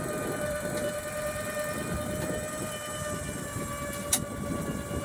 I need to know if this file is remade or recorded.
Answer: recorded